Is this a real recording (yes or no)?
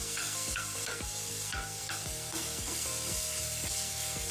no